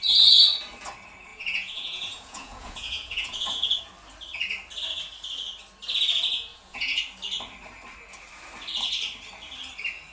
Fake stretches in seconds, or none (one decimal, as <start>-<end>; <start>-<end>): 1.3-3.8; 6.5-7.0